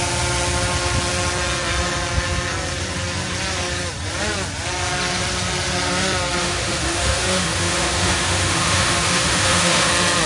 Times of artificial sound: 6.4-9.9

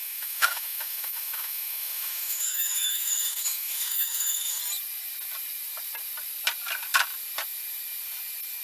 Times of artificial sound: 0.0-4.6

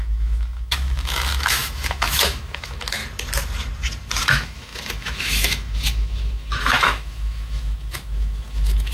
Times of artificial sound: 0.0-3.0; 4.2-8.9

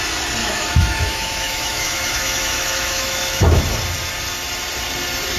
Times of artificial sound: 0.4-3.6

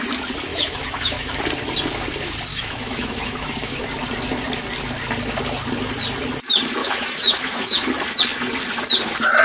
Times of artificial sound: 0.5-1.4; 2.5-3.8; 6.8-7.9

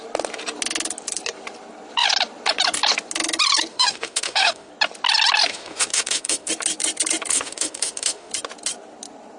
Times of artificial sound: 3.7-4.7; 5.5-6.5; 7.3-8.3

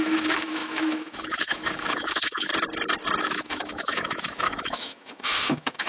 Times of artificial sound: 0.0-2.5; 3.2-5.9

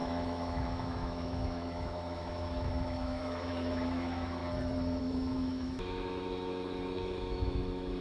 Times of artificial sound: 0.0-4.4; 5.0-8.0